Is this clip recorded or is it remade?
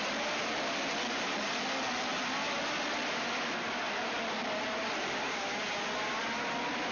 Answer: recorded